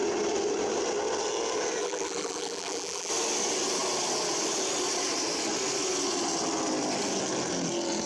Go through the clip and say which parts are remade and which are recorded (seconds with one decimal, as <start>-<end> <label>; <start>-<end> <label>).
0.0-1.8 recorded; 1.8-3.1 remade; 3.1-8.1 recorded

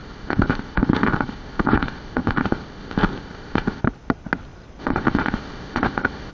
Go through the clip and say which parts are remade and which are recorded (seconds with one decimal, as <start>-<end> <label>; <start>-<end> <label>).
0.0-3.8 remade; 3.8-4.8 recorded; 4.8-6.3 remade

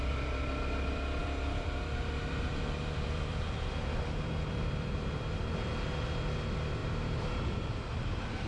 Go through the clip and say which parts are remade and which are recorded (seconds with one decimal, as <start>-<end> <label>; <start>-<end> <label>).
0.0-1.2 recorded; 1.2-5.5 remade; 5.5-6.8 recorded; 6.8-8.5 remade

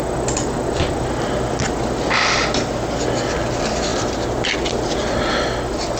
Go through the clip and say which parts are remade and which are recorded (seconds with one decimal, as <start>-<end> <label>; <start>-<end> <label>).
0.0-6.0 recorded

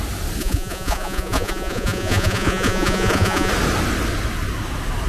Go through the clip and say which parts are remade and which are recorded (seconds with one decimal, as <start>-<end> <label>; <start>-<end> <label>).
0.0-0.4 recorded; 0.4-3.5 remade; 3.5-5.1 recorded

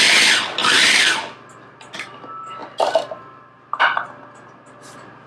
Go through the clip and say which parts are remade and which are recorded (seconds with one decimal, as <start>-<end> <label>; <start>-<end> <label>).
0.0-0.6 recorded; 0.6-1.2 remade; 1.2-5.3 recorded